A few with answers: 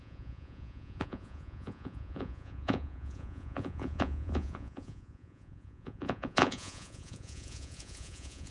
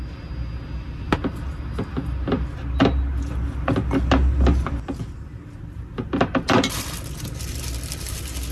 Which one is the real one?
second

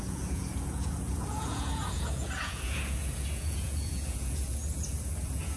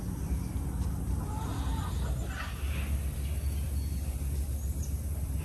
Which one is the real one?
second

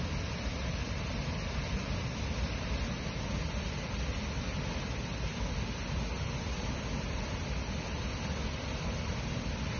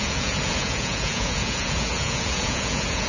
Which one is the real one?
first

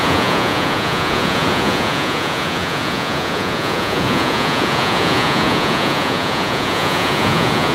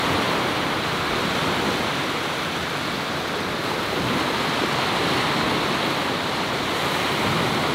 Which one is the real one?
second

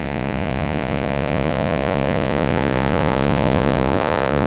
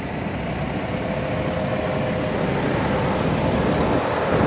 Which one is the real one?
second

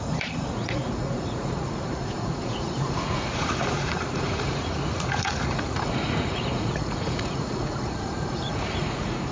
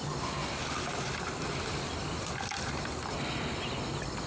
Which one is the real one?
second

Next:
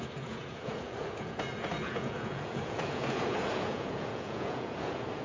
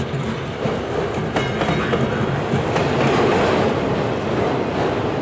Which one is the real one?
second